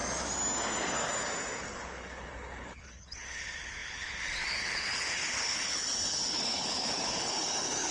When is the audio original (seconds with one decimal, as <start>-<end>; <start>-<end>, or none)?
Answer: 0.0-1.6